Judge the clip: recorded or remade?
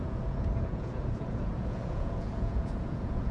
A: remade